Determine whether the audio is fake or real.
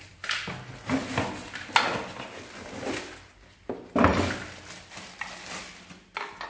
real